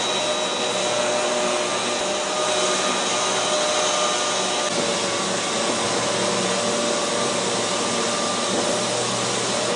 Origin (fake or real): real